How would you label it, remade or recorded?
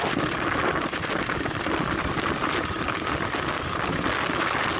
recorded